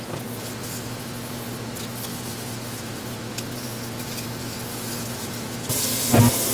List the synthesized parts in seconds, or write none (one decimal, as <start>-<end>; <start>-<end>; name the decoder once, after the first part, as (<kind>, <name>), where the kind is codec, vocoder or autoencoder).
2.1-3.0 (autoencoder, DAC-VAE); 4.7-5.7